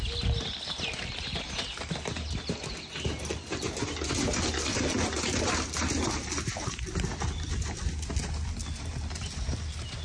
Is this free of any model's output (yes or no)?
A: yes